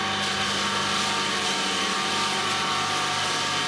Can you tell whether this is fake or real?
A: real